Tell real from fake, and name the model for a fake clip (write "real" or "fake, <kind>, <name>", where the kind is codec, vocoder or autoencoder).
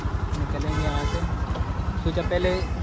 real